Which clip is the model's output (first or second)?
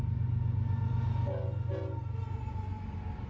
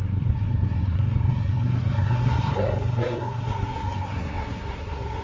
second